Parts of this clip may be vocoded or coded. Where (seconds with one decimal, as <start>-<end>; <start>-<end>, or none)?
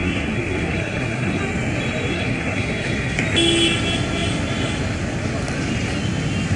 0.0-1.4; 2.1-3.2